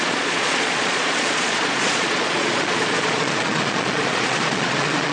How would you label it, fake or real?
fake